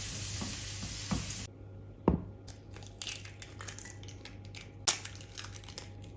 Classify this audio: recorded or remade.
recorded